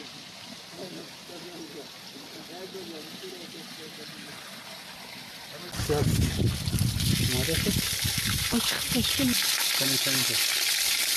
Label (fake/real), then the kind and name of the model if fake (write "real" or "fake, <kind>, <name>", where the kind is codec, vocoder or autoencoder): real